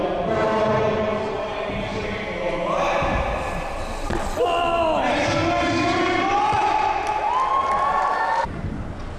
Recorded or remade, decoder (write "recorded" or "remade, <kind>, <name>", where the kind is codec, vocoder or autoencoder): recorded